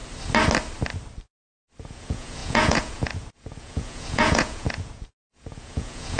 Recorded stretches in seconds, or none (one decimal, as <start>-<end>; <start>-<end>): 0.0-1.8